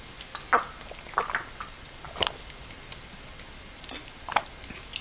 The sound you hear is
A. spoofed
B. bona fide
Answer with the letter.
B